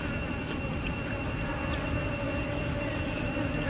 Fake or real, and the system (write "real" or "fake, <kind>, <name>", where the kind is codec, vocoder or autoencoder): real